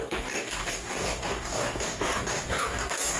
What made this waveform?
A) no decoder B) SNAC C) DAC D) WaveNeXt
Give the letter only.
C